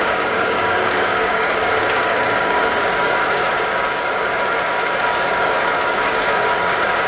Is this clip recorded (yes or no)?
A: no